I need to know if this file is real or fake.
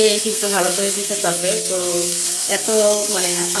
fake